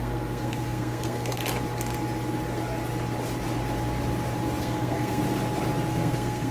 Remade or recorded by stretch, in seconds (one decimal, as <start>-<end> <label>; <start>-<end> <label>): 0.0-1.4 remade; 1.4-4.6 recorded; 4.6-5.2 remade; 5.2-5.9 recorded; 5.9-6.5 remade